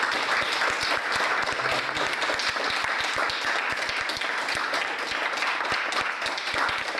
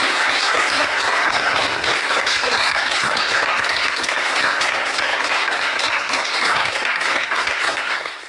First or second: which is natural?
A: first